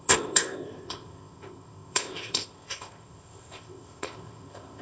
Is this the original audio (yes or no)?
no